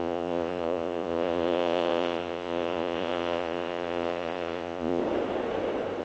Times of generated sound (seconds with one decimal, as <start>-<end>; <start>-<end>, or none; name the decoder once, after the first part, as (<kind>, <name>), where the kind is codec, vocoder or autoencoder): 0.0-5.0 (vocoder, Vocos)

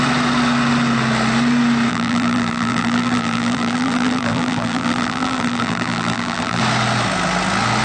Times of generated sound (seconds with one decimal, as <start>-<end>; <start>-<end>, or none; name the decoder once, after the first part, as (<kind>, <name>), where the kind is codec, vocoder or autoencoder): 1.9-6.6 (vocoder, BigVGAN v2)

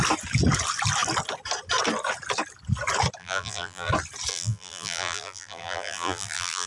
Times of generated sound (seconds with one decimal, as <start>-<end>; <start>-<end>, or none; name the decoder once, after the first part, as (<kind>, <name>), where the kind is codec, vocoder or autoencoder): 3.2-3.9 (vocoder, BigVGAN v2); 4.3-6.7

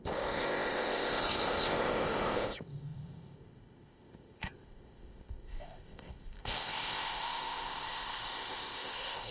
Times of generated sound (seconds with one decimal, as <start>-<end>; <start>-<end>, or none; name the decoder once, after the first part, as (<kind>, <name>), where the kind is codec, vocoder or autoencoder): 0.0-9.3 (codec, ZipCodec)

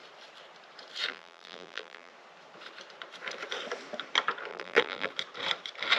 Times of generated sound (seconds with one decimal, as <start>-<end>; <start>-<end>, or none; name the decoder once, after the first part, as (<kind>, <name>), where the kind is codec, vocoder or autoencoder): 1.1-2.1 (vocoder, BigVGAN v2); 4.5-5.1

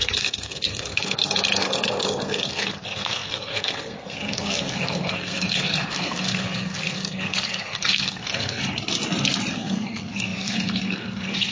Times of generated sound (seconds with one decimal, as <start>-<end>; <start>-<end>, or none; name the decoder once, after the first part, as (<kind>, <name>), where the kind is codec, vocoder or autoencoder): 0.0-8.6 (codec, SNAC); 9.5-11.5